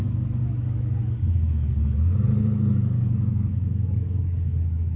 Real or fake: fake